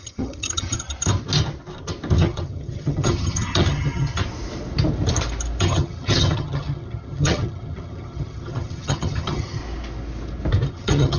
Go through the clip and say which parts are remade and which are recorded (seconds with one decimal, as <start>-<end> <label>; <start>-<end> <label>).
0.0-0.9 remade; 0.9-2.2 recorded; 2.2-4.2 remade; 4.2-5.6 recorded; 5.6-9.6 remade; 9.6-10.7 recorded; 10.7-11.2 remade